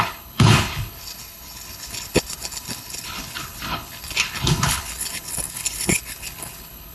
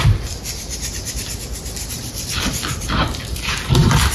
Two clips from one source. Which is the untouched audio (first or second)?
second